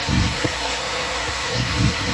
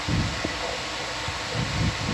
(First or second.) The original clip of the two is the second